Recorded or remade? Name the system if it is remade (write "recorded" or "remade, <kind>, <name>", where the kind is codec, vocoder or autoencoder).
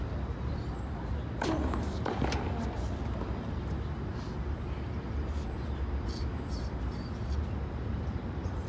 recorded